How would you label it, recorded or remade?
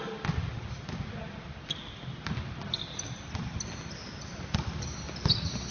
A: recorded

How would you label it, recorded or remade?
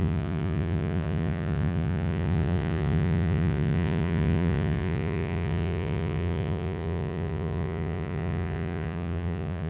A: remade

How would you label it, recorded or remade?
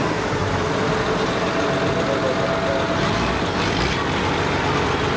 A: recorded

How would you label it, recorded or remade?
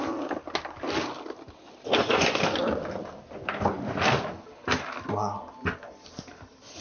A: recorded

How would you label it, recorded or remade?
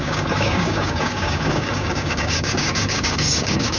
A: remade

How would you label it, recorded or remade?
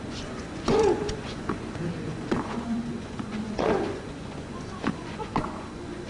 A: remade